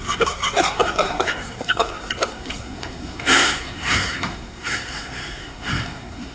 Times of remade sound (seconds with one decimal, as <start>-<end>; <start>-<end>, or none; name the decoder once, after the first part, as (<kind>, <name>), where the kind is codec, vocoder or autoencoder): 0.0-6.3 (codec, SNAC)